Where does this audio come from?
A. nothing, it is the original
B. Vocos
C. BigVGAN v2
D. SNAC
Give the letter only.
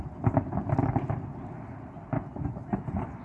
A